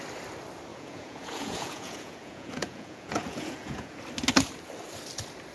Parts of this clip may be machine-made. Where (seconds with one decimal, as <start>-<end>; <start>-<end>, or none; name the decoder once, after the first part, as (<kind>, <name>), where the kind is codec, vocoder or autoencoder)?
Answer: 0.7-4.0 (vocoder, Vocos)